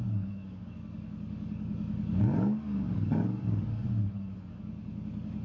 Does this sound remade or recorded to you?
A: remade